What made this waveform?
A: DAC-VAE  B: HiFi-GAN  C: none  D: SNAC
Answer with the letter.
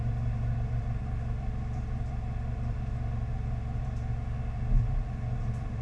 C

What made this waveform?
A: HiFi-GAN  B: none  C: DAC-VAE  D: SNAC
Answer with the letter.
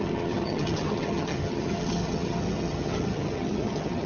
A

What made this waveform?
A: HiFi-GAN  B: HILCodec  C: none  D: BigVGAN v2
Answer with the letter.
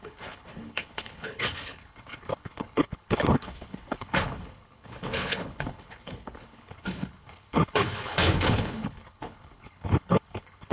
B